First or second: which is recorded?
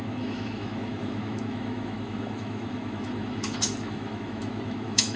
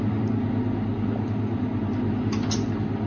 second